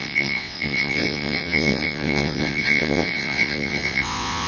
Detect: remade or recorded remade